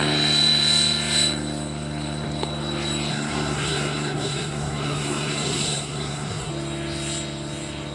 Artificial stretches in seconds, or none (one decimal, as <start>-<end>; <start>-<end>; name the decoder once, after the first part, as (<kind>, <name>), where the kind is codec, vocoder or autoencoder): 3.1-6.5 (codec, SNAC)